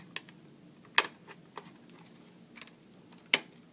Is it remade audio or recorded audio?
recorded